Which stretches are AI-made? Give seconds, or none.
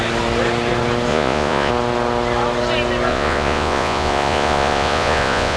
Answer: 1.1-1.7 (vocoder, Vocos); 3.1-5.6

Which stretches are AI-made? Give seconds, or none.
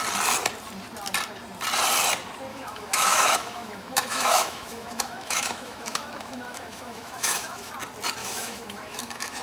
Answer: 2.5-7.7 (autoencoder, DAC-VAE); 8.2-9.4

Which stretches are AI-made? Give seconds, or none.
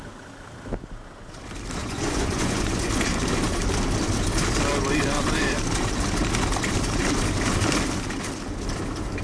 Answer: 1.8-2.9 (vocoder, Vocos)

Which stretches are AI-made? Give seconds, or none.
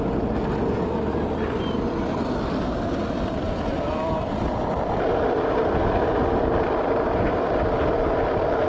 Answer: none